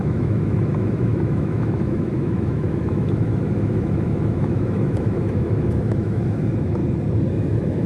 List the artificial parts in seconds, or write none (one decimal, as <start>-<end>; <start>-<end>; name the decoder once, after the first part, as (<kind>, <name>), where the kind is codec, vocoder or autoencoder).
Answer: 0.0-6.8 (autoencoder, DAC-VAE); 7.3-7.9